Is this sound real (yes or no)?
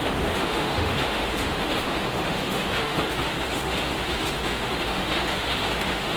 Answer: no